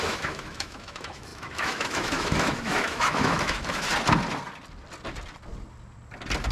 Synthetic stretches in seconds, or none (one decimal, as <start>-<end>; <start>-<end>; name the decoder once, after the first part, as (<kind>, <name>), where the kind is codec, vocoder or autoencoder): 0.0-3.9 (autoencoder, DAC-VAE)